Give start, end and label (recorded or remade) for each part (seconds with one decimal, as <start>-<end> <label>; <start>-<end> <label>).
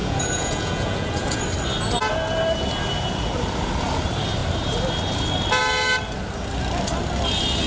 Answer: 0.0-1.4 remade; 1.4-7.7 recorded